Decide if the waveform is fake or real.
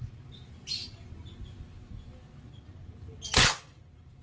real